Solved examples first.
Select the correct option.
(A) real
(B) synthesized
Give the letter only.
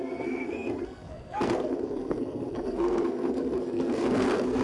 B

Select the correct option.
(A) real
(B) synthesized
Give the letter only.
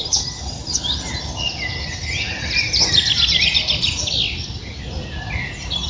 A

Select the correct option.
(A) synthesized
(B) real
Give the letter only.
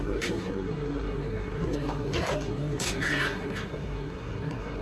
A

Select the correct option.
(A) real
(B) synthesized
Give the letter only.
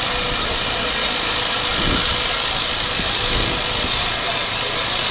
A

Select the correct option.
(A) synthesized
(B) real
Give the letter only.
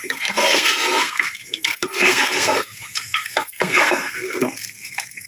A